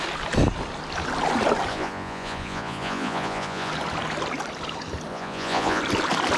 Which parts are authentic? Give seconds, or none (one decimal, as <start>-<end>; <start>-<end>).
0.0-1.7; 3.7-5.1; 5.8-6.4